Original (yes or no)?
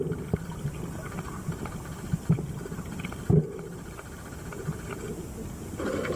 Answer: yes